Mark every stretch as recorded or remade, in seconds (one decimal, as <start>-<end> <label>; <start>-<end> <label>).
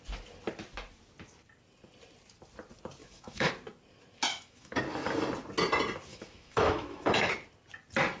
0.0-3.0 recorded; 3.0-3.5 remade; 3.5-4.3 recorded; 4.3-4.8 remade; 4.8-6.1 recorded; 6.1-7.3 remade; 7.3-8.2 recorded